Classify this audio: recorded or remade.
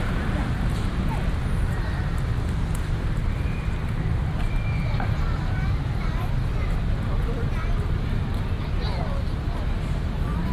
recorded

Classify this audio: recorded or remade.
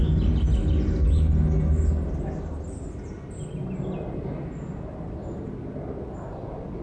recorded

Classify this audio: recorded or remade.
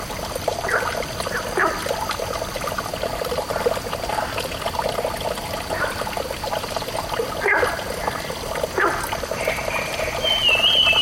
recorded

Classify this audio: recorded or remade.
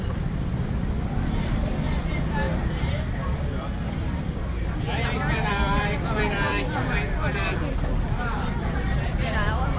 remade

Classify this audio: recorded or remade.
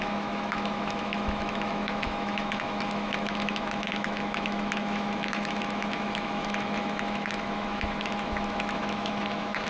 remade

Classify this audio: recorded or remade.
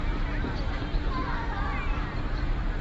recorded